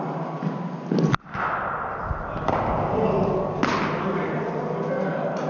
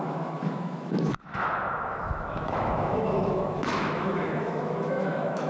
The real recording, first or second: first